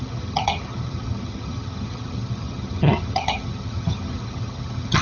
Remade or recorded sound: remade